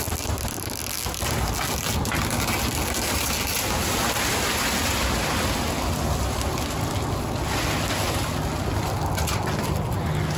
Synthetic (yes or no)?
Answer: no